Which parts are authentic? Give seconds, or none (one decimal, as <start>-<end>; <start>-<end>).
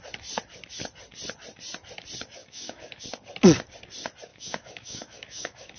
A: 0.0-2.4; 3.0-4.3